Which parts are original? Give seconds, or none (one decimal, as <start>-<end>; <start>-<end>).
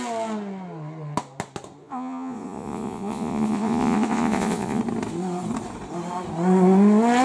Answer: 0.0-1.8; 4.8-7.2